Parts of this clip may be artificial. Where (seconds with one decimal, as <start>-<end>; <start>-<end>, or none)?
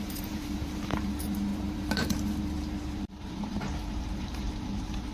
0.0-5.1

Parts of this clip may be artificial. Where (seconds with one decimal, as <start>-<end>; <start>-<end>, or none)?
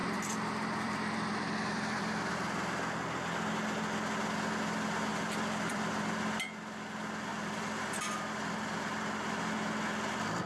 0.0-2.3; 5.1-6.2; 7.3-7.9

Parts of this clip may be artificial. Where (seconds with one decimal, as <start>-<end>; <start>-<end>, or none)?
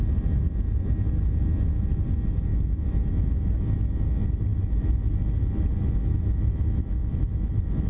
4.5-5.2; 7.0-7.9